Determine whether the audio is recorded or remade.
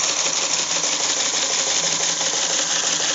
recorded